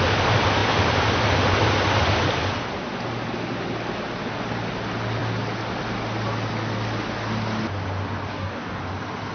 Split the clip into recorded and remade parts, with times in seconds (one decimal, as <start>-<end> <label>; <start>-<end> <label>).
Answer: 0.0-8.3 recorded; 8.3-8.8 remade; 8.8-9.3 recorded

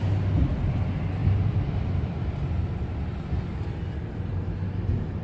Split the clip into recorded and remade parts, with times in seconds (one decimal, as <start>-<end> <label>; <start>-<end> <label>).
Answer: 0.0-5.2 recorded

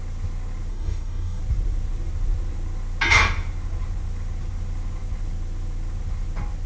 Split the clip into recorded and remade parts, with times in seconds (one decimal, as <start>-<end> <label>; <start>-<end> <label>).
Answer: 0.0-0.7 recorded; 0.7-1.4 remade; 1.4-6.7 recorded

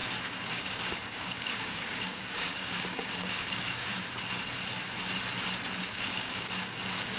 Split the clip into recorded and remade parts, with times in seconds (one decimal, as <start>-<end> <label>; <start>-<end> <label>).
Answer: 0.0-0.5 recorded; 0.5-3.9 remade; 3.9-5.8 recorded; 5.8-7.2 remade

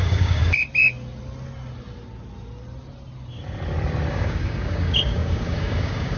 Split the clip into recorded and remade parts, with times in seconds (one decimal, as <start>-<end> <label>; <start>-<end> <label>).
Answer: 0.0-0.4 remade; 0.4-4.1 recorded; 4.1-6.2 remade

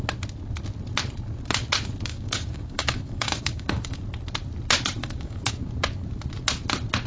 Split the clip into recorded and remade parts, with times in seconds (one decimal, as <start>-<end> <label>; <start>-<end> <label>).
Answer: 0.0-2.1 recorded; 2.1-4.0 remade; 4.0-5.0 recorded; 5.0-5.5 remade; 5.5-7.1 recorded